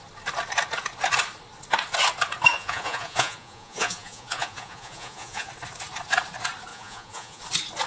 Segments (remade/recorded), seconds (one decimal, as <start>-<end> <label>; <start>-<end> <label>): 0.0-2.5 recorded; 2.5-5.5 remade; 5.5-6.7 recorded; 6.7-7.4 remade; 7.4-7.9 recorded